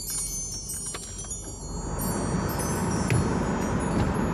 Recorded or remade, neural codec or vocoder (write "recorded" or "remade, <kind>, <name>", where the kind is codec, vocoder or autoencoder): recorded